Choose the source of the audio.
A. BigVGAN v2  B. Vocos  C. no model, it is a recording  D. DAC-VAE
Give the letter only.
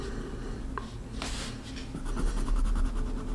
C